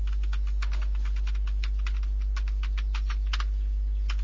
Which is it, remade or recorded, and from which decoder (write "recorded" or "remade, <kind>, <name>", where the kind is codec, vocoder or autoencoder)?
recorded